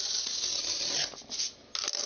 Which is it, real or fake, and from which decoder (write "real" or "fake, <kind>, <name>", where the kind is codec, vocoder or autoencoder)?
real